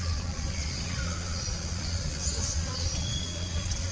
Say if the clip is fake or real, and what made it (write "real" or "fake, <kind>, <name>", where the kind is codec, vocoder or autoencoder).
fake, vocoder, Vocos